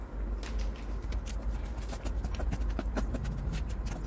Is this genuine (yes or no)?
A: yes